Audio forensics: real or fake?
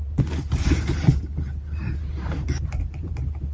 fake